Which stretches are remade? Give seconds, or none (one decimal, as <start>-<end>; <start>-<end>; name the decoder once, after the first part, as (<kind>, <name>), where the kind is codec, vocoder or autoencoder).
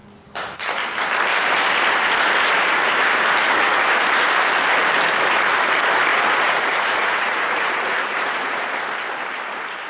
6.1-8.6 (vocoder, Vocos)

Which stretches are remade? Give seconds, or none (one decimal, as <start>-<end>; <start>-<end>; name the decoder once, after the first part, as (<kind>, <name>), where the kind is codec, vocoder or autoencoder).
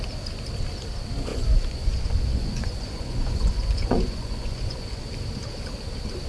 1.3-5.0 (vocoder, Vocos)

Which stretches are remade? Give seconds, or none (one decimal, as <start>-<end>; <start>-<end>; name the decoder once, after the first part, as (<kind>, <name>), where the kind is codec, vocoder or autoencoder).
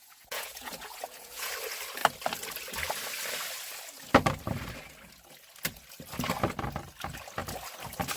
0.0-1.5 (vocoder, Vocos)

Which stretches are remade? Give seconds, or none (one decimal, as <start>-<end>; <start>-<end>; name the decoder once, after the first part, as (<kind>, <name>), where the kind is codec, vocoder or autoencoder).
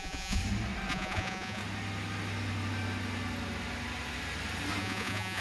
0.0-0.4 (vocoder, Vocos); 0.9-1.6; 4.8-5.4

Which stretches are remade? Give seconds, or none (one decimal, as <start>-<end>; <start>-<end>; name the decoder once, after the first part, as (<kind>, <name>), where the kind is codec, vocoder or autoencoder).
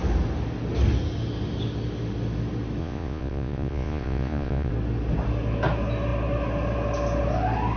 2.8-4.7 (vocoder, Vocos)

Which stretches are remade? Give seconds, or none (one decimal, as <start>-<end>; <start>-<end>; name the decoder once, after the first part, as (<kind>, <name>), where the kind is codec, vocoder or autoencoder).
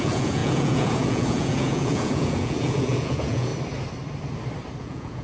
0.0-3.5 (vocoder, Vocos); 4.8-5.2